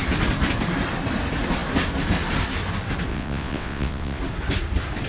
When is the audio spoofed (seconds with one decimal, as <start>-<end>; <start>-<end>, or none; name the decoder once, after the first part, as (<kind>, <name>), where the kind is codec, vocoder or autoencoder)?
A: 3.1-4.2 (vocoder, WaveNeXt)